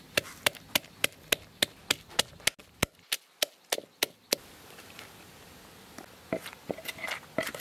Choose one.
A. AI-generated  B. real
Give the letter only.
B